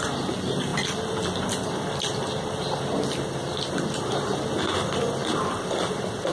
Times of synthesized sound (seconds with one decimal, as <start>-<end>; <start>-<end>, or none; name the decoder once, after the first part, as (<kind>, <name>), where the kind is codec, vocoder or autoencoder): none